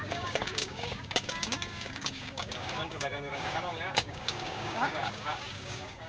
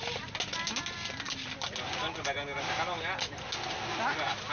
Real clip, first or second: second